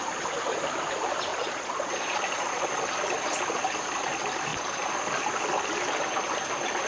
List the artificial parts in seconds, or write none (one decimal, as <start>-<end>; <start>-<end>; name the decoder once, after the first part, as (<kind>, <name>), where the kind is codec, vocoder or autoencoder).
1.3-2.6 (vocoder, Vocos)